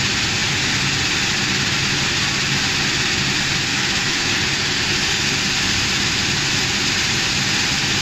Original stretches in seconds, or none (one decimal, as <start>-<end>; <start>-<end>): 0.0-3.7; 4.3-8.0